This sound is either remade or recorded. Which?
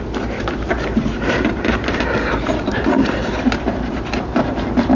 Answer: remade